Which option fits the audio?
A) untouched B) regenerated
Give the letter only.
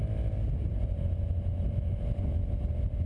A